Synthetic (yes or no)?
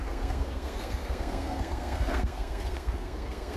yes